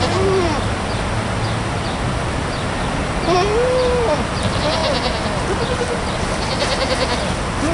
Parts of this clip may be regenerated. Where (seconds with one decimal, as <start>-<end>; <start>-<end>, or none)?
none